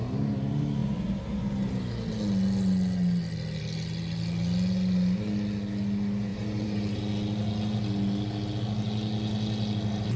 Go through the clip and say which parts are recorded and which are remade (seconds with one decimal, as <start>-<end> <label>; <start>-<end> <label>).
0.0-6.3 recorded; 6.3-7.0 remade; 7.0-10.2 recorded